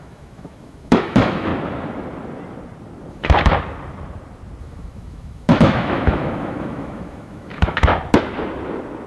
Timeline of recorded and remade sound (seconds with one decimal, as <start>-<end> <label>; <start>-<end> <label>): 0.0-1.5 remade; 1.5-3.1 recorded; 3.1-3.5 remade; 3.5-4.6 recorded; 4.6-7.9 remade; 7.9-9.1 recorded